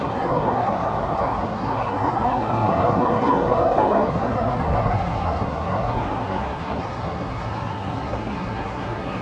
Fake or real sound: fake